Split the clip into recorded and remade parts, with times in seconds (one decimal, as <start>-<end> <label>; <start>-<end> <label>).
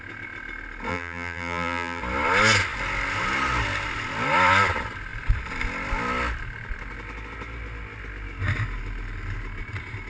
0.0-0.9 recorded; 0.9-2.0 remade; 2.0-10.1 recorded